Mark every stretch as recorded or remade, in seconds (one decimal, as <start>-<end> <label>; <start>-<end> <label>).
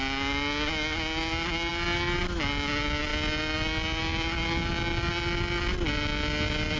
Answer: 0.0-6.8 recorded